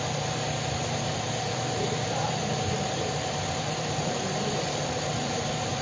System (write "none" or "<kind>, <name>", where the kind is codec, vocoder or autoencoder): vocoder, BigVGAN v2